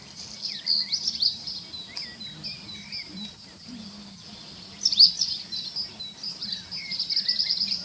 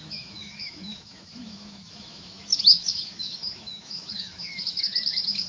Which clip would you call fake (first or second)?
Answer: second